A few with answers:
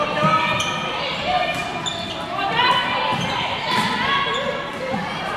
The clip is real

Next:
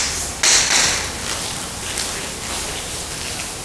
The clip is real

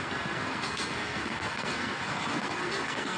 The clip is fake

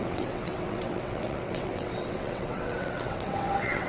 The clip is fake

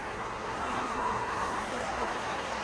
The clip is fake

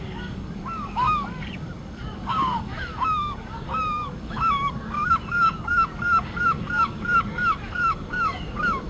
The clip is fake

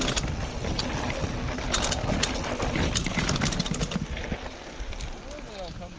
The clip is real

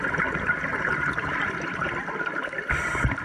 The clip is real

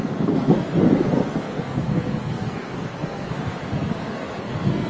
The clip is fake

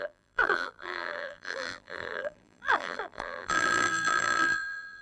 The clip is fake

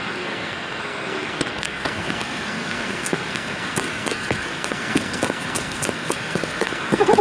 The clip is fake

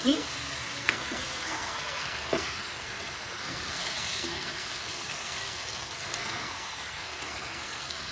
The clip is fake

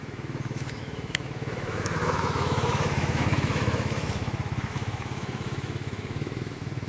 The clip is fake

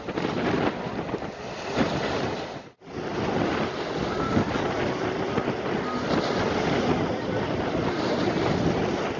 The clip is real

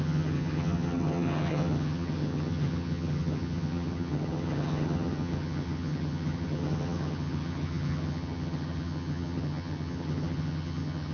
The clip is fake